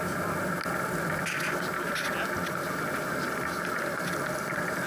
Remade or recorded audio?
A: recorded